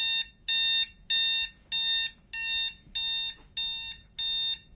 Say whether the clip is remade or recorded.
recorded